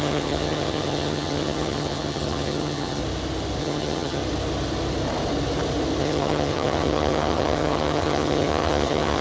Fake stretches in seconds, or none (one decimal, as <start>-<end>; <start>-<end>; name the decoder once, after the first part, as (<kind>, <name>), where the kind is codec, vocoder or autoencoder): 0.0-3.0 (vocoder, HiFi-GAN); 3.6-4.2; 6.0-9.2